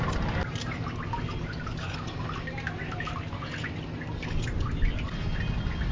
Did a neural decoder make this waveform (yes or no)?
no